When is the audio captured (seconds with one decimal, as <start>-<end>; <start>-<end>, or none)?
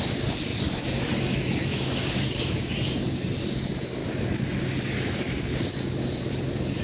none